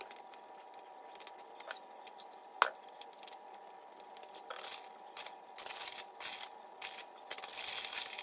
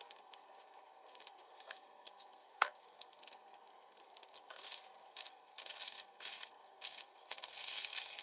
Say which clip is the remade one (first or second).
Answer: second